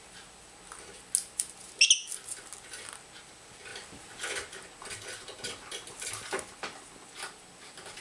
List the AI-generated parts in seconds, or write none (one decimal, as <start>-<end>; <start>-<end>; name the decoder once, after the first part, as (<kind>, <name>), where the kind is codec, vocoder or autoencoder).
none